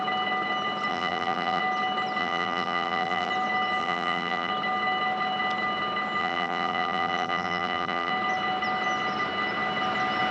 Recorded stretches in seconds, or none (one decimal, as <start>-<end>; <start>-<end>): 0.0-0.9; 1.6-2.2; 3.3-3.8; 4.5-6.2; 8.1-10.3